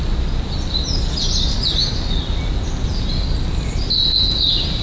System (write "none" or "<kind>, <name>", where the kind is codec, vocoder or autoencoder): none